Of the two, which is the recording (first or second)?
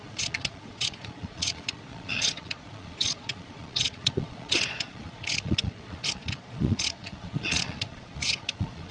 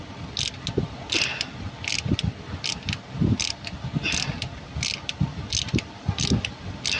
second